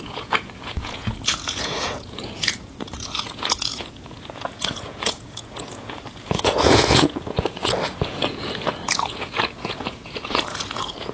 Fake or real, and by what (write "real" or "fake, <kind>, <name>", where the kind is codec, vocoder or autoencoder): fake, vocoder, Vocos